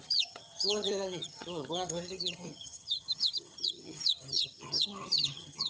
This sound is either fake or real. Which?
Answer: fake